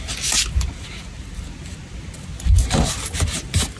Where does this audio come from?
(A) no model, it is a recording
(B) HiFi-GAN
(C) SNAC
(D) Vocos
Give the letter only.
A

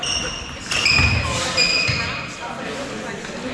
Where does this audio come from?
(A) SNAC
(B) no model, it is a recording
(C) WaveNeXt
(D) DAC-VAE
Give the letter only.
B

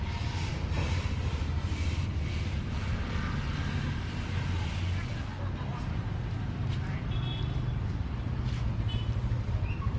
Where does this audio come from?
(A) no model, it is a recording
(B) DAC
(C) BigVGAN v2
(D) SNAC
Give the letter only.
A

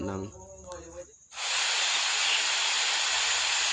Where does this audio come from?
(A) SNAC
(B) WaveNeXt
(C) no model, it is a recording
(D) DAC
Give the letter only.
C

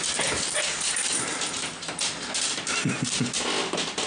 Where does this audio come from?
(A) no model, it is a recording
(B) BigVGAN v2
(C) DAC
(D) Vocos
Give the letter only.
A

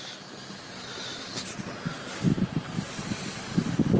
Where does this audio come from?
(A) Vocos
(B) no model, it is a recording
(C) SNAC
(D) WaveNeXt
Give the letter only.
B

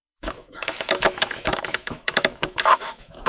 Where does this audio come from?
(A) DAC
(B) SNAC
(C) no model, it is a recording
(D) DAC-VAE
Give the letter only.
D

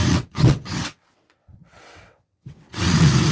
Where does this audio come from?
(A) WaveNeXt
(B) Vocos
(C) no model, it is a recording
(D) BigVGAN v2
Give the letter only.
A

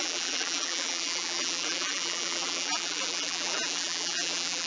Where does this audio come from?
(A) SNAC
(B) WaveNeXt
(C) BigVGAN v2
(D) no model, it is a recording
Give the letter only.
C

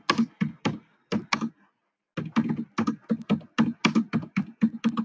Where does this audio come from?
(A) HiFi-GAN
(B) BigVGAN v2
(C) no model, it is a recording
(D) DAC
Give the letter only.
C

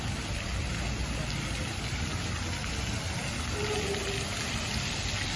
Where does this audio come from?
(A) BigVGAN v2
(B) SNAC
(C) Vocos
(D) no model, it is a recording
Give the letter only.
D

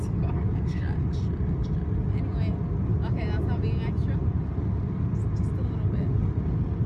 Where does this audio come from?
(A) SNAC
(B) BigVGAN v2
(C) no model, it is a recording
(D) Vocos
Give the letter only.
C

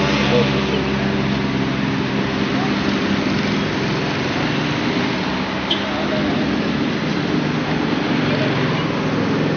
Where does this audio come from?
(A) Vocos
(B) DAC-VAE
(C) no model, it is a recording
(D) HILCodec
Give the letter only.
C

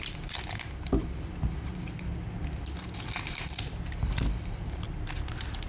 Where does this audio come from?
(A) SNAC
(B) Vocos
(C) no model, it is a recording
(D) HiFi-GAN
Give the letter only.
C